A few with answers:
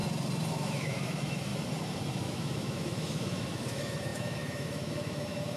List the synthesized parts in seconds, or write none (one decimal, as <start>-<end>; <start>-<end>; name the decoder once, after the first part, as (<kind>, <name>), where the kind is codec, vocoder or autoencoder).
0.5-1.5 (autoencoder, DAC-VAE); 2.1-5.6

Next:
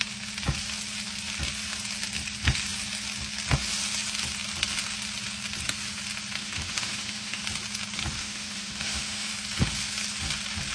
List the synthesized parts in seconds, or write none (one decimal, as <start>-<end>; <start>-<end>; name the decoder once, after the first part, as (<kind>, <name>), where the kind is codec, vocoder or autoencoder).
6.4-7.4 (autoencoder, DAC-VAE); 8.2-9.3

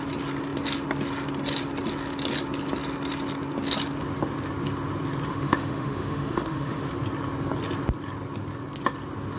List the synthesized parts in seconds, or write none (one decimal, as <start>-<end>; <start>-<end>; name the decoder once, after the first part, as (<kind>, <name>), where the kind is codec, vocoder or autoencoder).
5.3-6.9 (autoencoder, DAC-VAE)

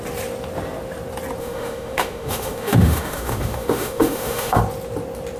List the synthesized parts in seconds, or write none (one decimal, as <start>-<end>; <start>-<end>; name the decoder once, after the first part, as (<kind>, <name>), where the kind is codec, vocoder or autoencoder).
1.4-4.6 (autoencoder, DAC-VAE)